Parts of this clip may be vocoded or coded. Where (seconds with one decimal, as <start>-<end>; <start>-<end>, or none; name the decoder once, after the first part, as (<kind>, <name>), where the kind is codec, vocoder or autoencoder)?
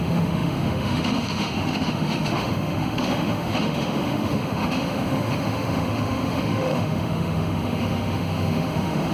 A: 0.0-9.1 (autoencoder, DAC-VAE)